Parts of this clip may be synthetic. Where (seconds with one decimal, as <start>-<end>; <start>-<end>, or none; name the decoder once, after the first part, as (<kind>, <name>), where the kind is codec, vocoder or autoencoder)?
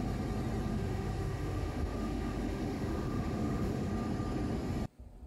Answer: 0.7-3.9 (autoencoder, DAC-VAE)